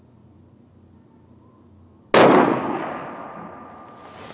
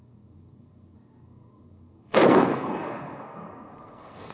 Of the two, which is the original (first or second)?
first